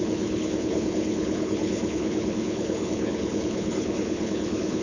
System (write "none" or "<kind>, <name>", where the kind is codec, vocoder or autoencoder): codec, HILCodec